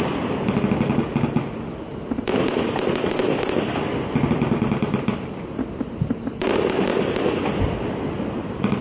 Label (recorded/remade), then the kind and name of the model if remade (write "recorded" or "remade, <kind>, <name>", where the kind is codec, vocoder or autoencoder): recorded